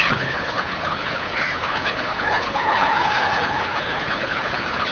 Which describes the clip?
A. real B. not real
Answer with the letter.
B